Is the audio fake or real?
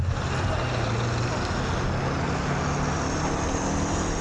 real